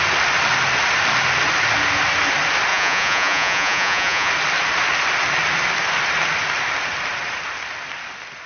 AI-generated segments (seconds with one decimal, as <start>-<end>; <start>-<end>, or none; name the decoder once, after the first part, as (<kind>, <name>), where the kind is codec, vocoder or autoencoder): 2.7-4.3 (vocoder, Vocos)

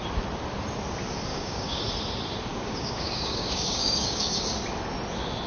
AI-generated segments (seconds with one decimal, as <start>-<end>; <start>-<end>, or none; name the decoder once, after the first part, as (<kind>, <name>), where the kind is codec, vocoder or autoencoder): 1.3-1.8 (codec, DAC); 2.5-4.4